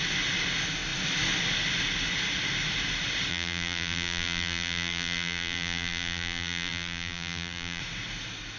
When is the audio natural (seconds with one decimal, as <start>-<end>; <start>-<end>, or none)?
0.0-3.3; 7.8-8.6